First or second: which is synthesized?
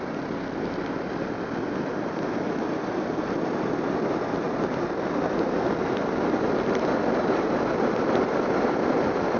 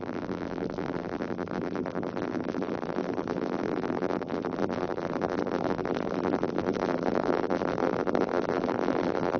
second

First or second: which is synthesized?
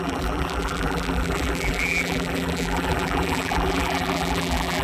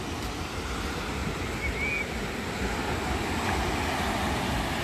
first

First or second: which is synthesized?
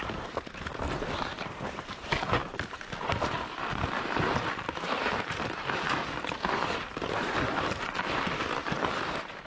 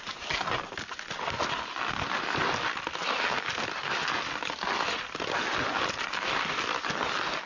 first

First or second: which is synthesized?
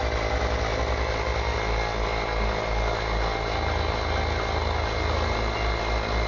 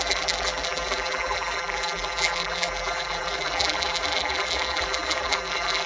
second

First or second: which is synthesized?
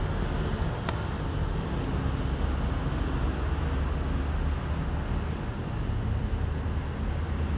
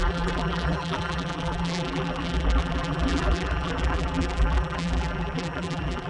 second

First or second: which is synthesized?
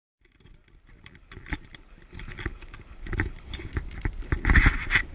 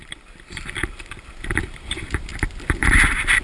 second